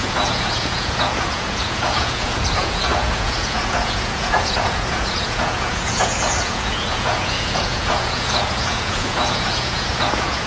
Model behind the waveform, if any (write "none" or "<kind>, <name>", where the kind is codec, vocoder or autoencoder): vocoder, Vocos